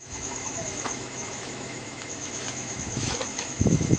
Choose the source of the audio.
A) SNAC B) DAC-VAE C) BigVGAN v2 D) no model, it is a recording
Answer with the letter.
B